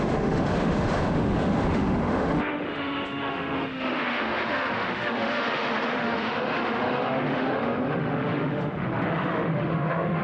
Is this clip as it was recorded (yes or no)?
no